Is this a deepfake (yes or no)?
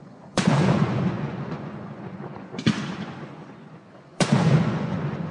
yes